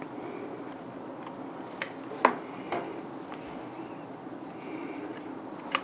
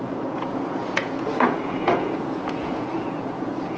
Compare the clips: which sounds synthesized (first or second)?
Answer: second